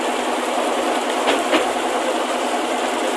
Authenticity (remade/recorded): recorded